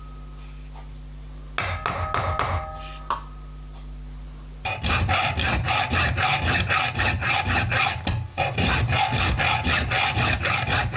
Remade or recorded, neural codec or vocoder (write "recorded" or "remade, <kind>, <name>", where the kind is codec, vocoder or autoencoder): recorded